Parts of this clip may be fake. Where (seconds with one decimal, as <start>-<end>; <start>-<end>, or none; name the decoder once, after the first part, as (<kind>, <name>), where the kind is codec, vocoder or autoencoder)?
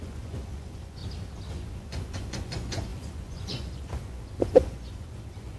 0.0-1.0 (vocoder, Vocos); 1.5-5.6